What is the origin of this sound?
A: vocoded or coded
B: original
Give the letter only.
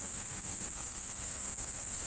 A